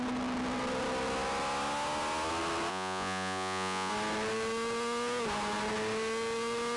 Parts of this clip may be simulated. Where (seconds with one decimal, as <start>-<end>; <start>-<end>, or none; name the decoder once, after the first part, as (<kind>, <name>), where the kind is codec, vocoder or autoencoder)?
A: 2.7-3.9 (vocoder, Vocos)